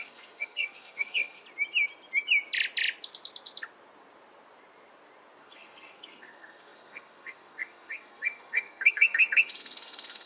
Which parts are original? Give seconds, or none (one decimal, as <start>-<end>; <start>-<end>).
1.4-5.4